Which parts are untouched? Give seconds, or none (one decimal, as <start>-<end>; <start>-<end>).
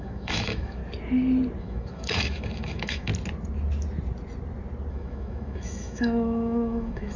0.8-1.6; 3.1-4.9